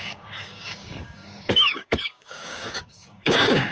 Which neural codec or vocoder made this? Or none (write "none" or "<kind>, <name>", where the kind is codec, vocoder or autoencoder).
codec, DAC